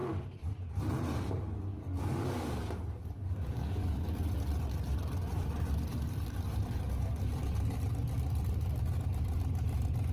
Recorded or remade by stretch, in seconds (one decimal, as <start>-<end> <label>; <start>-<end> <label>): 0.0-1.7 recorded; 1.7-4.1 remade; 4.1-10.1 recorded